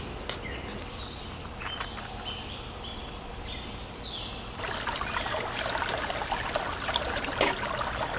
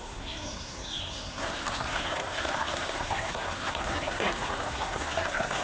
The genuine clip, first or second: first